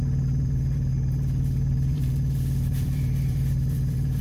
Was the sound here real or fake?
fake